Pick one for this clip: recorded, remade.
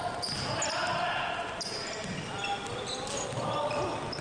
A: recorded